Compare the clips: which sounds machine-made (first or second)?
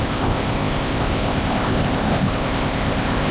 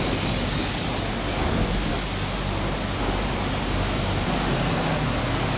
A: first